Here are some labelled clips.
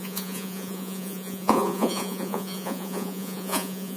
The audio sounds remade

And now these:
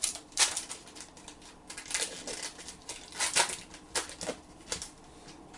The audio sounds recorded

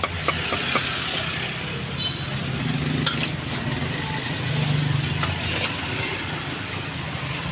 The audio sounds recorded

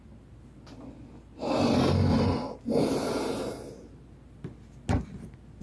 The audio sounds recorded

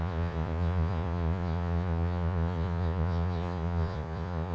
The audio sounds remade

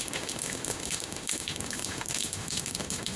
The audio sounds remade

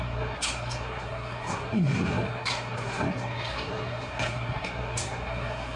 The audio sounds remade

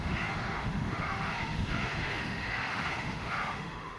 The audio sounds remade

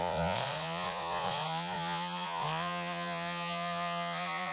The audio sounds remade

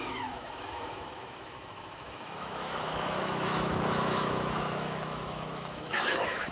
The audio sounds remade